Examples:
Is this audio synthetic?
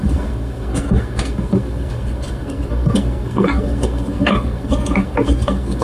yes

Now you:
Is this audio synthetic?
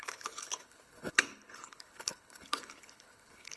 yes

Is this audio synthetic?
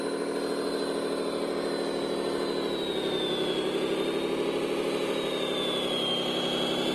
no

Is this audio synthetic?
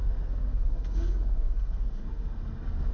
yes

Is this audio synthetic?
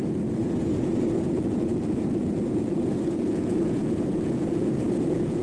yes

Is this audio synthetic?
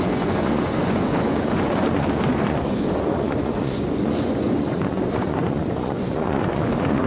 yes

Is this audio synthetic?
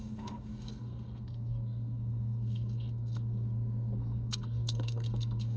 yes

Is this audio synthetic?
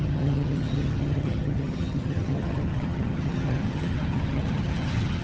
yes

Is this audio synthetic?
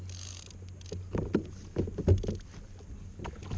no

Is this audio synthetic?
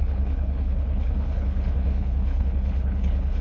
yes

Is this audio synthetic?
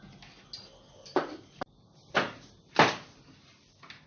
no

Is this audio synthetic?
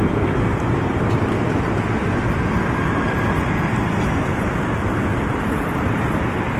yes